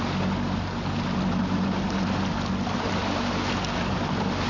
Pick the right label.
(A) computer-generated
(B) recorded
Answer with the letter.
B